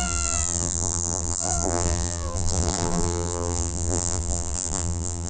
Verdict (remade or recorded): remade